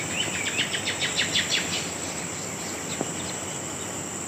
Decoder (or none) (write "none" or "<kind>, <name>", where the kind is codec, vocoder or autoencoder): vocoder, BigVGAN v2